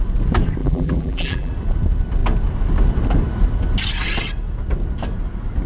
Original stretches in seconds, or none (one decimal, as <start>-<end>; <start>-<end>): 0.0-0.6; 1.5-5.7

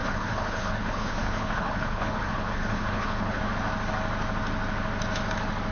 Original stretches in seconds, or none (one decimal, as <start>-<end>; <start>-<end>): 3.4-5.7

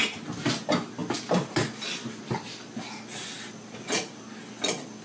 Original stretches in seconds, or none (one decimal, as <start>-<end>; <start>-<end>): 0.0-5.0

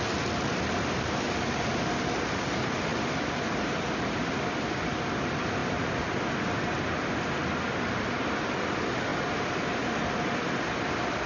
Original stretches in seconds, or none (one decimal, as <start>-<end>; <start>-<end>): 0.0-11.3